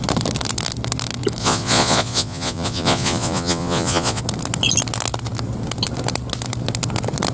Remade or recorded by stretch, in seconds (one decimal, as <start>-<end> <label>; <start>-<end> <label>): 0.0-1.4 recorded; 1.4-4.2 remade; 4.2-7.3 recorded